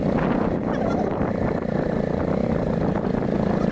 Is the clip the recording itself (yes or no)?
yes